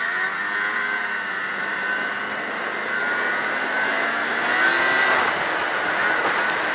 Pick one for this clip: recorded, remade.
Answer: recorded